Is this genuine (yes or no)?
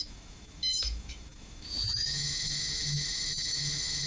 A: no